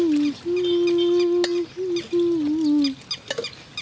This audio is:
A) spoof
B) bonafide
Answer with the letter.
B